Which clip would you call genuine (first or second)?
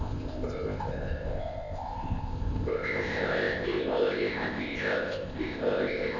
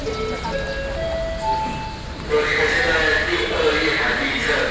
second